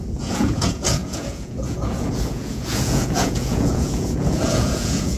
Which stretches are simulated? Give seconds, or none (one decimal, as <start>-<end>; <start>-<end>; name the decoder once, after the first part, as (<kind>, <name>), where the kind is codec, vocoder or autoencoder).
0.0-5.2 (vocoder, Vocos)